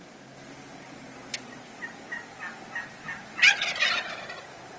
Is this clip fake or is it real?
real